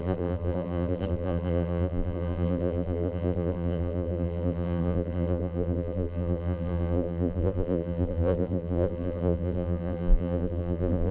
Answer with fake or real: fake